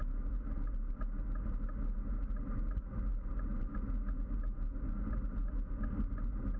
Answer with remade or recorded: recorded